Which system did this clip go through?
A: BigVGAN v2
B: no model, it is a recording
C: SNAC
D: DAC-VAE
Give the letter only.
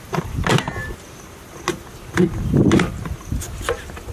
B